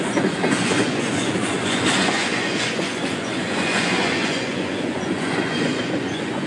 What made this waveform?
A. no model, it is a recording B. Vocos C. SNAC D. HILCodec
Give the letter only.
B